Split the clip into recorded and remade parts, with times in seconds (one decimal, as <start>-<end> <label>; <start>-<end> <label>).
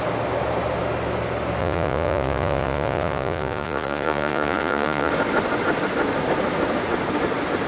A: 0.0-1.6 recorded; 1.6-5.1 remade; 5.1-7.7 recorded